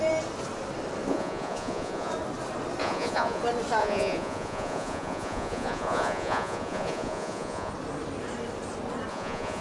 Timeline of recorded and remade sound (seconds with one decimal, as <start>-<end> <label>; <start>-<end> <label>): 0.0-1.1 recorded; 1.1-2.1 remade; 2.1-2.8 recorded; 2.8-3.4 remade; 3.4-3.8 recorded; 3.8-7.7 remade; 7.7-9.1 recorded; 9.1-9.6 remade